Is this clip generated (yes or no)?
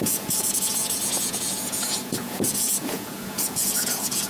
yes